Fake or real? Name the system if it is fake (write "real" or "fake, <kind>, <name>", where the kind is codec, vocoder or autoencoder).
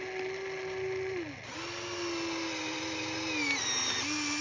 real